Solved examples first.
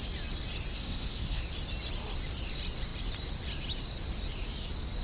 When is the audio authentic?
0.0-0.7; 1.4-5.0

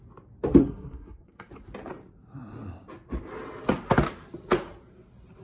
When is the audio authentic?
0.0-0.6; 1.5-5.4

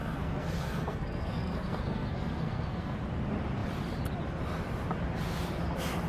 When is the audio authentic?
3.0-6.1

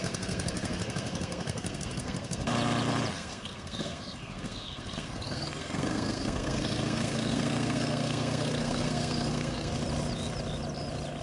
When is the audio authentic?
2.5-3.1; 9.7-11.2

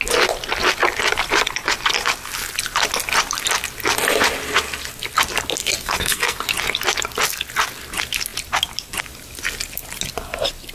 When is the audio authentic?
0.0-5.6; 6.4-10.7

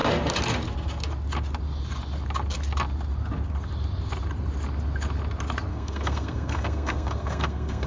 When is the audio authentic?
0.0-5.7